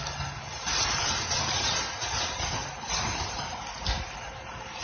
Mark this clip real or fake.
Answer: real